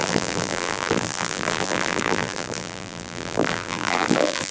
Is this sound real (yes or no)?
no